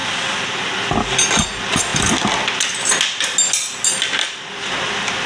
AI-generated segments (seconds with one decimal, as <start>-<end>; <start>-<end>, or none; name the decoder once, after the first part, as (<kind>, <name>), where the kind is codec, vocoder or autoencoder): none